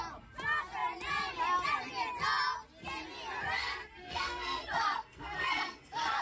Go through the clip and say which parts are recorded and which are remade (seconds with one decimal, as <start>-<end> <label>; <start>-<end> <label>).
0.0-3.6 recorded; 3.6-6.2 remade